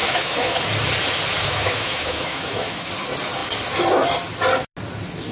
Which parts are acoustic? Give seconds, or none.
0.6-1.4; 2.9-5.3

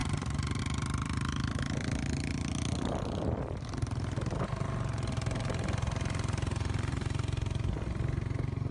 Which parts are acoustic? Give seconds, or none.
0.0-8.7

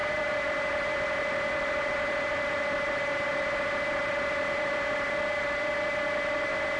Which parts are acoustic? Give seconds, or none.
0.0-6.8

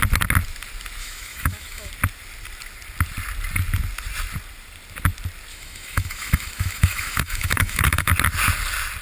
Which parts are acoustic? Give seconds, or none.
0.0-1.0; 1.9-5.5; 8.1-9.0

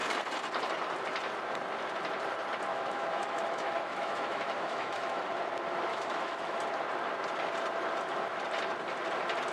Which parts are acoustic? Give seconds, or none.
0.0-2.7; 5.3-5.9; 6.6-9.5

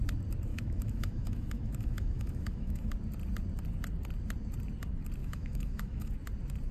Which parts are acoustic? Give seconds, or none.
0.0-0.5; 2.9-5.2; 6.1-6.7